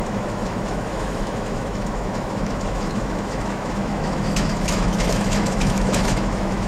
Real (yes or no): no